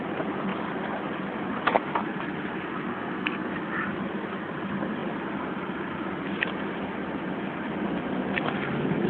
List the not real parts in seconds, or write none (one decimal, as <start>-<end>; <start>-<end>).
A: 2.9-3.5